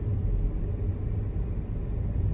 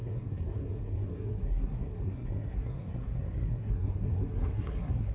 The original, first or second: first